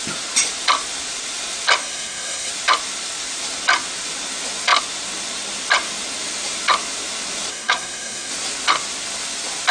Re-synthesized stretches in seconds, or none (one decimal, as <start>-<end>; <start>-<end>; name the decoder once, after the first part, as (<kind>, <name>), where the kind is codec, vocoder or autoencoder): 1.8-2.5 (codec, SNAC); 7.5-8.3